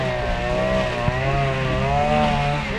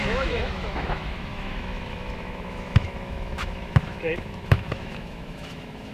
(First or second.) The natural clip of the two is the first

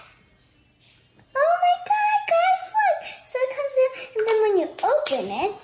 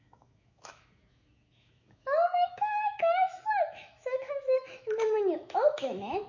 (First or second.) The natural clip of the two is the first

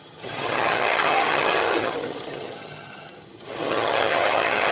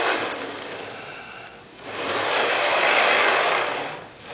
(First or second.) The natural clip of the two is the second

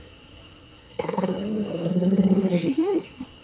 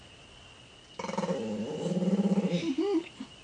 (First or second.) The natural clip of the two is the second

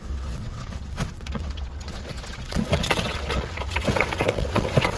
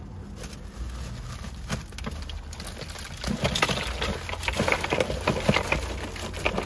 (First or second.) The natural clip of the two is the second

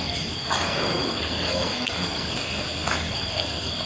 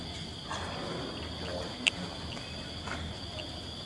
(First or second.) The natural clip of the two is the second